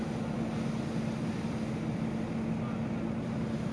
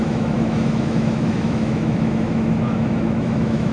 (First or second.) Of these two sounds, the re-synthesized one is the second